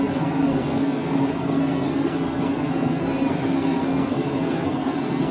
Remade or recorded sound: remade